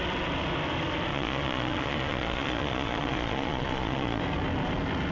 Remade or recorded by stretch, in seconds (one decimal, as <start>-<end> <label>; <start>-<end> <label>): 0.0-1.1 recorded; 1.1-4.2 remade; 4.2-5.1 recorded